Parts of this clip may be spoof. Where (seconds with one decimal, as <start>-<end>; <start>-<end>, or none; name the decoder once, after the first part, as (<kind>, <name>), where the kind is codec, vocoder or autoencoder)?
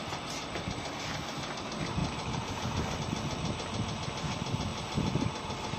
none